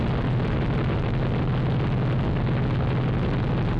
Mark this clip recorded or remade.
recorded